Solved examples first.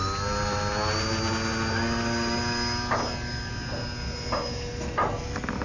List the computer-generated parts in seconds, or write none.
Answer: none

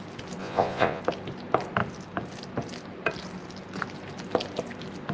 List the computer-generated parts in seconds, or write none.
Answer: 0.4-1.0 (vocoder, Vocos)